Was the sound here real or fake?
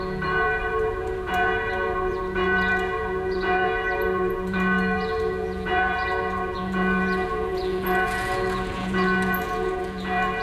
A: fake